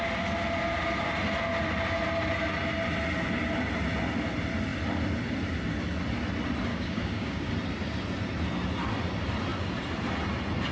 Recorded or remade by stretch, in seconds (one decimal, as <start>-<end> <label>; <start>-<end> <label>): 0.0-6.7 recorded; 6.7-7.5 remade; 7.5-10.7 recorded